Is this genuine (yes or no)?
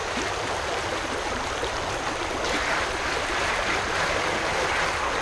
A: yes